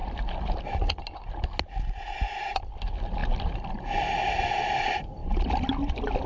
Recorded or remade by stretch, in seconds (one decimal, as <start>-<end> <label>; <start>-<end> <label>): 0.0-6.3 recorded